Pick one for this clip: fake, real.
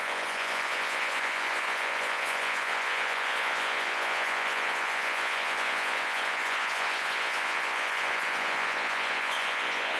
fake